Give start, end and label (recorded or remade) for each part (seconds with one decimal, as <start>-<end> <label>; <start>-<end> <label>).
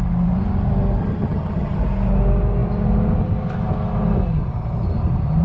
0.0-1.0 recorded; 1.0-1.8 remade; 1.8-5.4 recorded